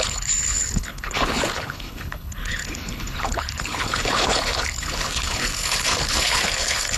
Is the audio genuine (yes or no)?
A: no